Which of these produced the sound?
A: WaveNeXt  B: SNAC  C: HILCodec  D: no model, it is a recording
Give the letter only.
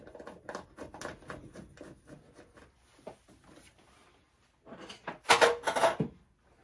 D